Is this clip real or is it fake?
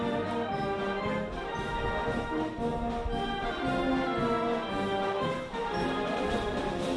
real